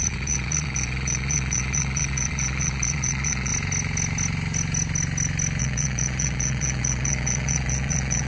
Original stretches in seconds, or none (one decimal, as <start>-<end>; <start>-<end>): 3.5-5.6